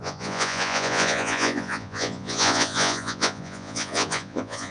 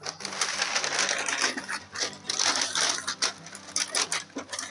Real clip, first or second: second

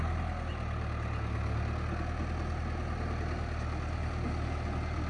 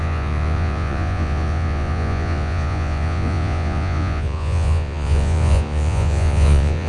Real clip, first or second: first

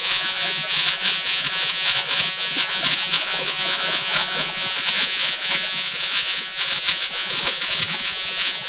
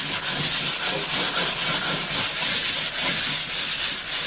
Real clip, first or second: second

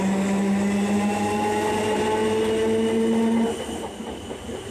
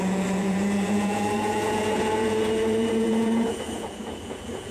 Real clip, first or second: first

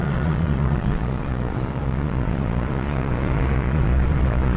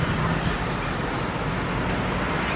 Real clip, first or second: second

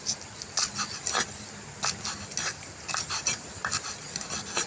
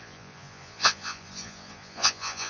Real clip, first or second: first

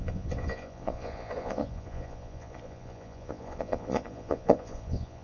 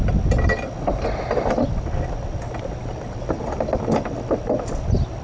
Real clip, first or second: second